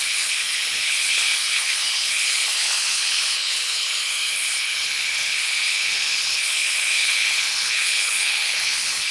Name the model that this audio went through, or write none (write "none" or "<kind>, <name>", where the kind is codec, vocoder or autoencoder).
codec, HILCodec